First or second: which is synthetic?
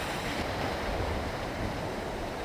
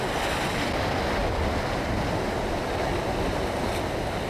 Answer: first